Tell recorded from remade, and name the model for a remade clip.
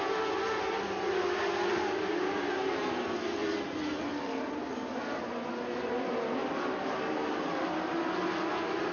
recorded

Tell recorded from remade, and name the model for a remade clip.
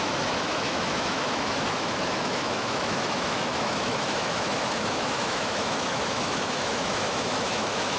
remade, autoencoder, DAC-VAE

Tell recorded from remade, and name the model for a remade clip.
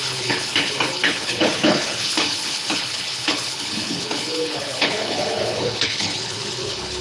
remade, codec, HILCodec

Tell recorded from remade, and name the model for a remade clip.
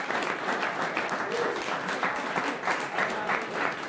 recorded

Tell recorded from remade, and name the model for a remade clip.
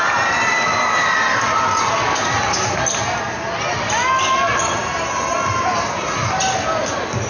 recorded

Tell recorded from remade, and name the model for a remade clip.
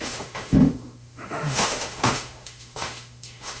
remade, autoencoder, DAC-VAE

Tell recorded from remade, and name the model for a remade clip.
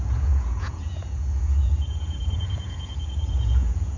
remade, vocoder, Vocos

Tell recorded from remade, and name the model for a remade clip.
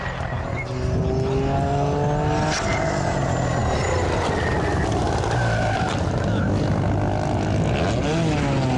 recorded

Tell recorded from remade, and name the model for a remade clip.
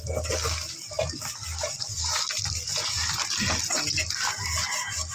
recorded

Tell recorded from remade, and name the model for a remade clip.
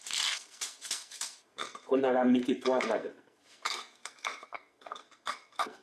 remade, codec, SNAC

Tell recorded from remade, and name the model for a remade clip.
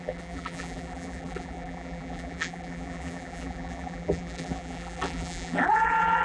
remade, vocoder, BigVGAN v2